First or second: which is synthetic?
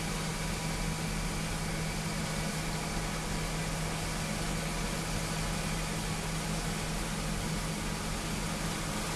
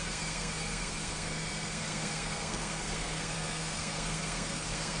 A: second